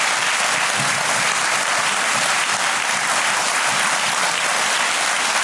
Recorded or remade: remade